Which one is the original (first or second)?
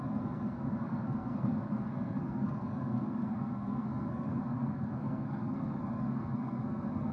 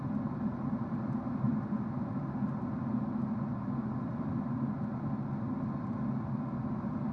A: second